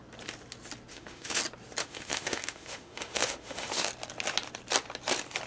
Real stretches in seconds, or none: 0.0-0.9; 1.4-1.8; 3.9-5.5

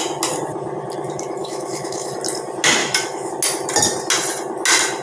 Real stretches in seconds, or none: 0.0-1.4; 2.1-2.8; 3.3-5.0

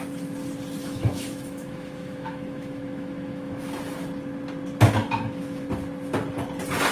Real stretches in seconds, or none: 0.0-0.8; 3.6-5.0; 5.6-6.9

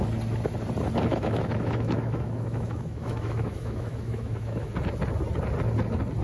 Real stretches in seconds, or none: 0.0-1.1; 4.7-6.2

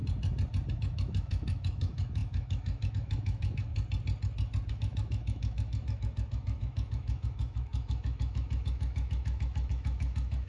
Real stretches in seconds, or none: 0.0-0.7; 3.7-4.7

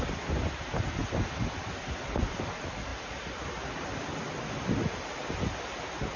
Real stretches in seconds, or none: 0.0-6.2

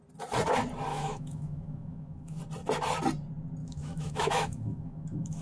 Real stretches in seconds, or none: 0.0-0.9; 2.4-3.6

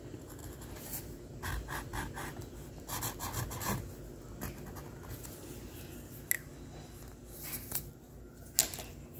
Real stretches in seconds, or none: 0.0-9.2